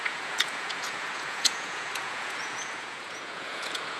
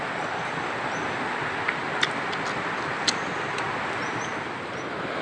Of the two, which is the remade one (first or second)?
first